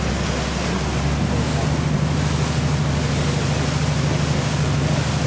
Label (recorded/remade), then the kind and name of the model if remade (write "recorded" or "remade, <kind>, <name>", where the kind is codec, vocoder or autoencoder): recorded